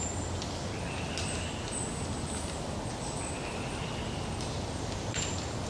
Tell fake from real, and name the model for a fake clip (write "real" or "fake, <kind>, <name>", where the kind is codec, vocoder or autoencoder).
real